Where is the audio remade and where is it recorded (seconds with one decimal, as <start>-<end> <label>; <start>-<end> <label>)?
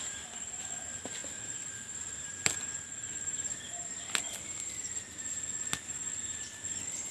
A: 0.0-7.1 recorded